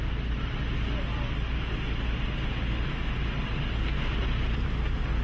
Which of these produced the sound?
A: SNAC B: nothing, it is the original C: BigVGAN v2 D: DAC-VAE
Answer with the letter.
B